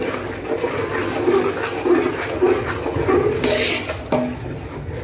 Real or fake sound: real